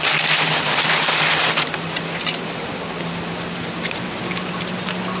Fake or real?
real